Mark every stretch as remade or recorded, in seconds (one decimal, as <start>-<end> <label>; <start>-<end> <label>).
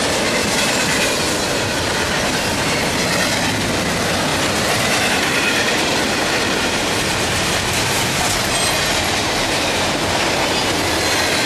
0.0-0.4 recorded; 0.4-1.1 remade; 1.1-4.3 recorded; 4.3-8.2 remade; 8.2-9.2 recorded; 9.2-10.5 remade; 10.5-11.5 recorded